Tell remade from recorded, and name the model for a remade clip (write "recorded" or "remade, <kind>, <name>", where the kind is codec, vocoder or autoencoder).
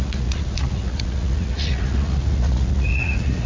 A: remade, vocoder, Vocos